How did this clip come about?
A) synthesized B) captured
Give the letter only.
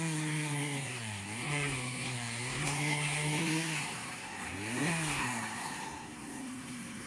A